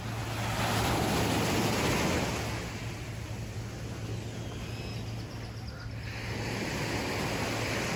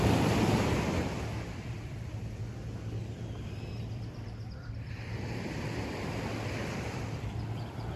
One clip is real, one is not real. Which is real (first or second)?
first